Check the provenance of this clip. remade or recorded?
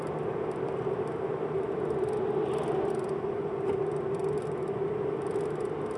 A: recorded